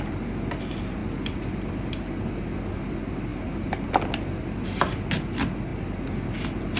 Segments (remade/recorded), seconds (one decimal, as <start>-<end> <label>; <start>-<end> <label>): 0.0-6.8 recorded